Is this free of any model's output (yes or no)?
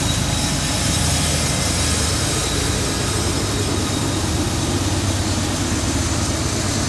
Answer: yes